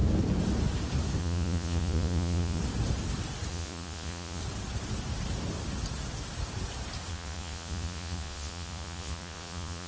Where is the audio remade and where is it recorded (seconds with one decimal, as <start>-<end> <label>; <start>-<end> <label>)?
0.0-1.2 recorded; 1.2-2.6 remade; 2.6-3.5 recorded; 3.5-4.4 remade; 4.4-7.1 recorded; 7.1-9.9 remade